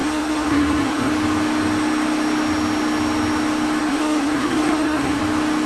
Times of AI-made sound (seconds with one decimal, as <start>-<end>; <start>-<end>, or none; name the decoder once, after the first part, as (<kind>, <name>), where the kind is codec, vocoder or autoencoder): 0.0-1.1 (codec, SNAC); 3.8-5.2